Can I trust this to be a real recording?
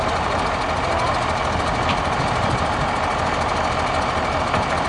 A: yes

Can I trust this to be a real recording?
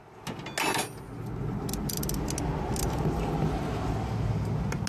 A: yes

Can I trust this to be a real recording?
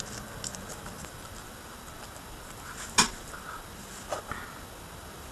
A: yes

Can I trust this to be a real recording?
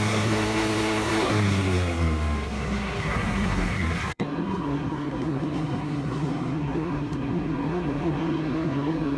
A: no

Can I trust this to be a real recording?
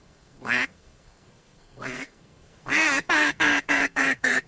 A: no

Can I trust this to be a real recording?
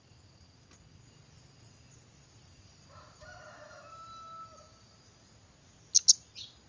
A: yes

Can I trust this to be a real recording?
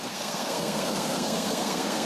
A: no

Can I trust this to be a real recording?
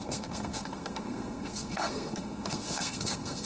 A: no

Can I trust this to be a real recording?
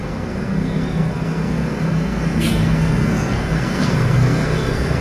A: no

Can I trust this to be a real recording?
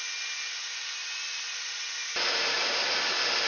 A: yes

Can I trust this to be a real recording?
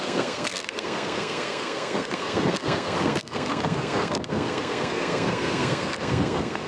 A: no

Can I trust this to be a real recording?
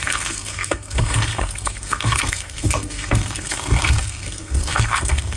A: no